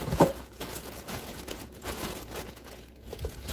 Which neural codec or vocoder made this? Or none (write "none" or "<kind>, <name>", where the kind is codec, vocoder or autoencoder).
vocoder, Vocos